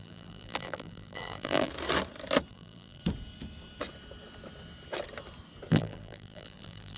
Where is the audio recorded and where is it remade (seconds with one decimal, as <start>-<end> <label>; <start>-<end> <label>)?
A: 0.0-1.7 remade; 1.7-2.5 recorded; 2.5-3.0 remade; 3.0-5.7 recorded; 5.7-7.0 remade